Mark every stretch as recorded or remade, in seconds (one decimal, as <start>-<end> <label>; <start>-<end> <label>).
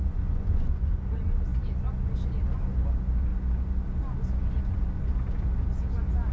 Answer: 0.0-1.0 remade; 1.0-6.3 recorded